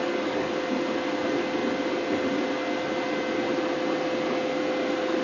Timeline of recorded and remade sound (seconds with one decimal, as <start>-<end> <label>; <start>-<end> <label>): 0.0-0.5 remade; 0.5-5.2 recorded